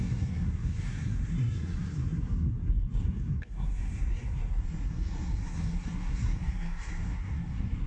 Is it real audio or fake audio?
fake